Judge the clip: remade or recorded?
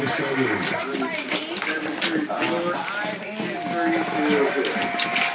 recorded